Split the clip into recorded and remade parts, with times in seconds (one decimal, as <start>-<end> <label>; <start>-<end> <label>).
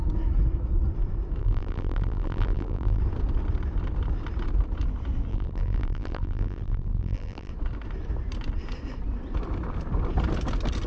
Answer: 0.0-1.4 recorded; 1.4-3.0 remade; 3.0-5.3 recorded; 5.3-7.5 remade; 7.5-10.9 recorded